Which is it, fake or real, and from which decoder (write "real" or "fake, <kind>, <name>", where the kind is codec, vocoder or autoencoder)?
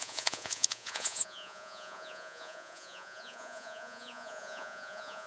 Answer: fake, vocoder, Vocos